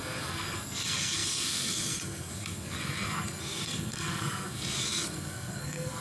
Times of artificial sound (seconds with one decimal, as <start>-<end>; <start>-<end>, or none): 0.0-6.0